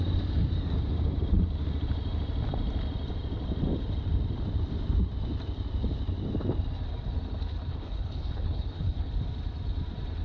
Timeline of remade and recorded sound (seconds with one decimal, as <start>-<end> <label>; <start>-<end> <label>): 0.0-7.7 recorded; 7.7-9.1 remade; 9.1-10.2 recorded